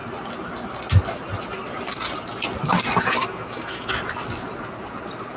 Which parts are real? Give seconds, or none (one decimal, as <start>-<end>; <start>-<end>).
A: 0.0-3.2; 3.9-5.4